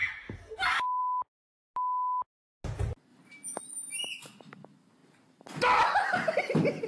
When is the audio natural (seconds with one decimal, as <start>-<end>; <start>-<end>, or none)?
0.0-3.1; 3.7-6.9